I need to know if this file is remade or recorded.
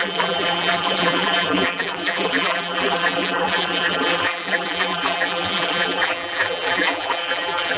remade